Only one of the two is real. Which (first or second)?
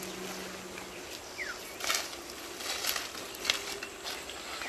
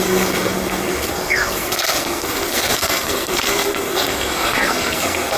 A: first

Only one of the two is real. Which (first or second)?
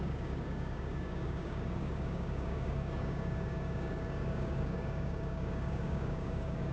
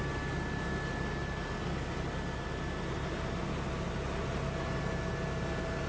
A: second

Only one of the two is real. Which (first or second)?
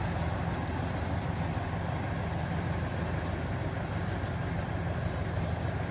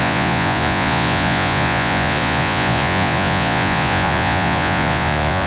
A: first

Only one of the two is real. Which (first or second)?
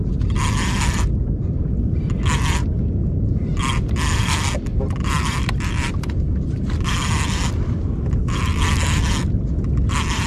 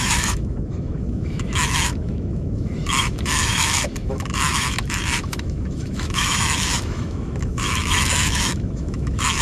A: first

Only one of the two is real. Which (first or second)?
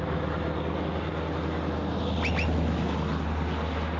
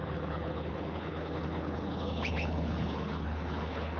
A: first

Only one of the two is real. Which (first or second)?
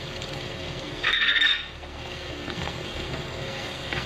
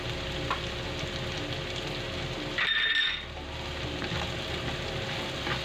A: second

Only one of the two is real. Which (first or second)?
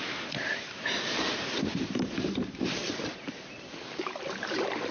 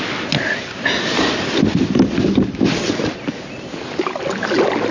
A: second